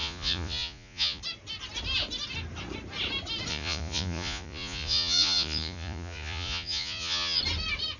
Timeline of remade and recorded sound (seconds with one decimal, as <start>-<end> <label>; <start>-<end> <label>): 0.0-1.2 remade; 1.2-3.5 recorded; 3.5-7.4 remade; 7.4-8.0 recorded